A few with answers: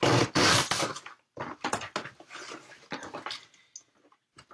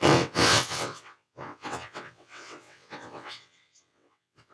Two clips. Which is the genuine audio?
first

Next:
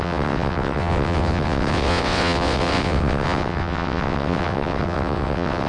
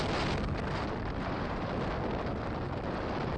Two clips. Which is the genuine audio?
second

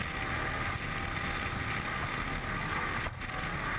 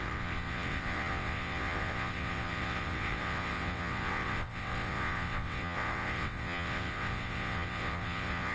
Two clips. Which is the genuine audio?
first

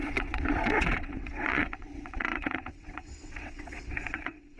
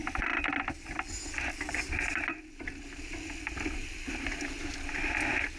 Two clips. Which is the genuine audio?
second